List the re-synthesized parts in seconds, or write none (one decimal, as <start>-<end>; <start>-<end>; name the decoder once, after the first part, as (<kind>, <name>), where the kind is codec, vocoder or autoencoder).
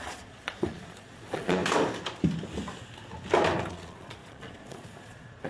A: 0.0-1.6 (vocoder, Vocos); 3.7-5.5